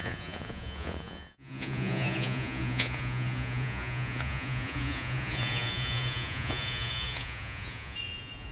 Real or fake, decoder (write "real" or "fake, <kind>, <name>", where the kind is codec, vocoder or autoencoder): fake, vocoder, Vocos